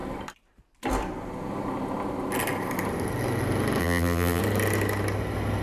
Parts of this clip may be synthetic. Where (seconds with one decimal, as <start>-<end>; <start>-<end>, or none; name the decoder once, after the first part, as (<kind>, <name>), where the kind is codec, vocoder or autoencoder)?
3.8-4.4 (vocoder, BigVGAN v2)